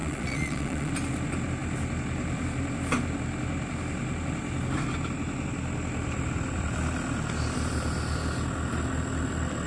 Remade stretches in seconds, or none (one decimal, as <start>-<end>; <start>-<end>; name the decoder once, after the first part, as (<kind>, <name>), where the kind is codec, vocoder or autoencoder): 0.0-0.9 (vocoder, Vocos)